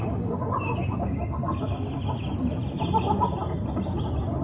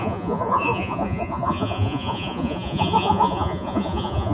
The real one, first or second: first